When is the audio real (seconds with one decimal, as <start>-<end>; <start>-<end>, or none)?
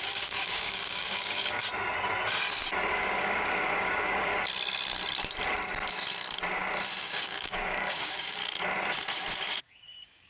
1.6-2.9; 4.3-7.0; 8.4-9.6